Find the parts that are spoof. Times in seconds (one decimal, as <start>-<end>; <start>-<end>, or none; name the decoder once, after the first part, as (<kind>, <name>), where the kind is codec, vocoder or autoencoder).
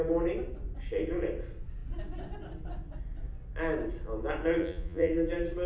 4.6-5.1 (vocoder, Vocos)